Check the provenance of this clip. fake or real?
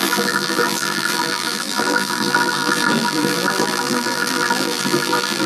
fake